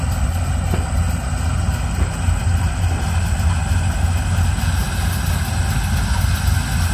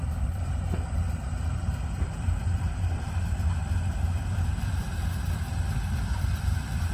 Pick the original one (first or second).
first